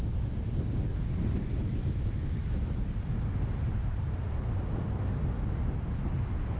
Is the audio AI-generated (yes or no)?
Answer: no